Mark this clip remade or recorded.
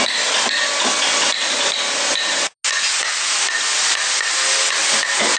recorded